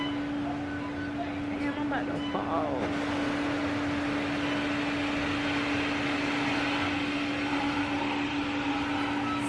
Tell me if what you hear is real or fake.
real